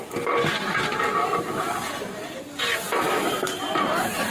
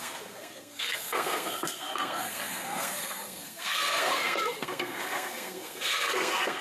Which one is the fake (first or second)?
second